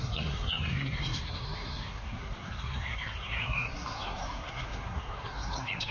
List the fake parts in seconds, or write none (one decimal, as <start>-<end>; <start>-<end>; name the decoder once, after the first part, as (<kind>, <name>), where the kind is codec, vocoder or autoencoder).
0.0-5.9 (codec, SNAC)